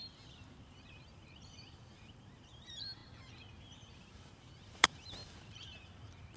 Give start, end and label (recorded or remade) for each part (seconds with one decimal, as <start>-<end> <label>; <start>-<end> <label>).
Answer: 0.0-0.6 recorded; 0.6-3.0 remade; 3.0-3.6 recorded; 3.6-6.4 remade